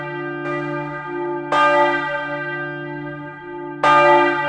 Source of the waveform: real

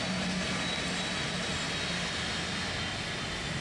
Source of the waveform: real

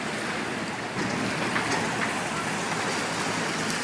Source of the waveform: real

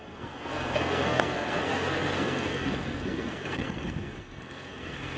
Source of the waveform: fake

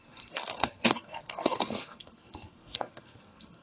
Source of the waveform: fake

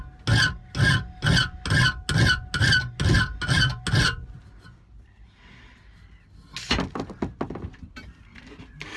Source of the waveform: real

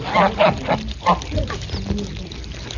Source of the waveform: real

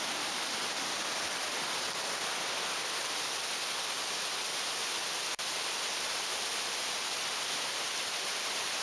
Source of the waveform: real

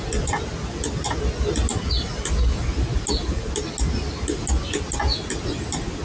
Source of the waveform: real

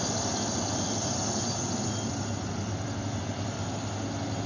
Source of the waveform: real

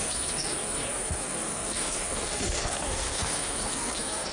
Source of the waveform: fake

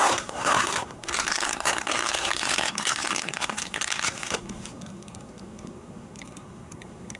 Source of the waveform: fake